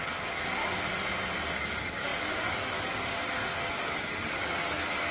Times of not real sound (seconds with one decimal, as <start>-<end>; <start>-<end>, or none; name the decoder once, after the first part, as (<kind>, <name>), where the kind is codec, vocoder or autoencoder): 0.0-0.6 (codec, DAC); 1.6-5.1